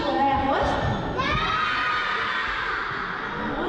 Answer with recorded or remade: recorded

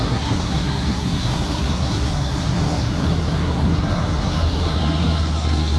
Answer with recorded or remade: remade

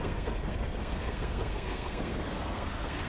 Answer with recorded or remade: remade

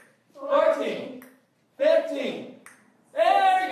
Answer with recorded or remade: recorded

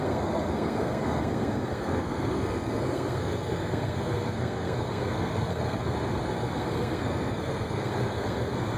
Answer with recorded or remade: remade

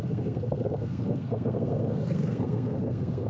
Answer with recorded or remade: remade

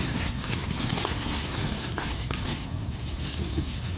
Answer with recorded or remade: remade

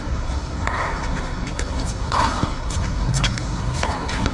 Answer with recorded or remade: remade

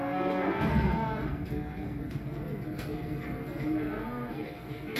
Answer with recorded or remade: remade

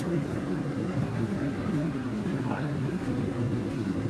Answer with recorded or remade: remade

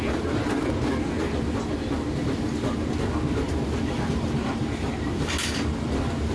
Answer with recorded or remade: recorded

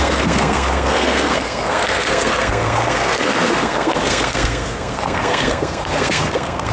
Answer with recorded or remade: remade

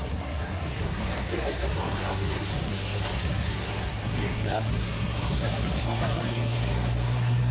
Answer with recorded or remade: remade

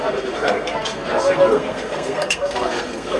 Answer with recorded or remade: remade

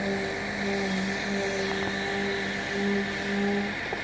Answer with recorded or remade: recorded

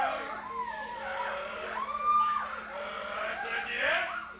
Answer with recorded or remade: recorded